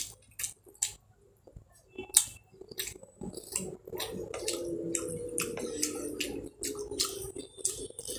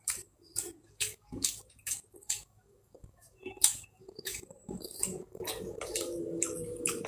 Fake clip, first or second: second